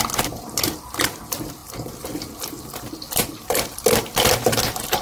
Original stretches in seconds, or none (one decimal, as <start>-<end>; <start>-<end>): 0.0-5.0